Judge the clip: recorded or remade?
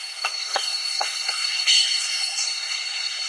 remade